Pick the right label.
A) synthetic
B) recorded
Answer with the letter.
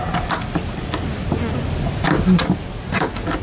B